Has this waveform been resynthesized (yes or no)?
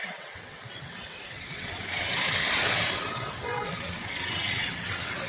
yes